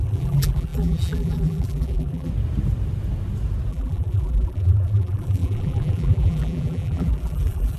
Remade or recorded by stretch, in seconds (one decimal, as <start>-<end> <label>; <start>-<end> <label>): 0.0-2.3 remade; 2.3-3.7 recorded; 3.7-7.8 remade